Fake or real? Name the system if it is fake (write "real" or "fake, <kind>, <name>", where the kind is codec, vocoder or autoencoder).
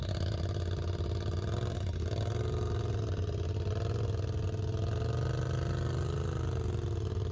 real